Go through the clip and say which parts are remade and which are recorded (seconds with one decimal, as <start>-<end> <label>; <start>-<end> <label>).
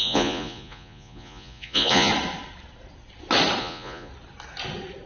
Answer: 0.0-2.1 remade; 2.1-3.6 recorded; 3.6-4.1 remade; 4.1-5.1 recorded